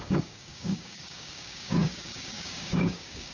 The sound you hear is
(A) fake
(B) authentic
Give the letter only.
A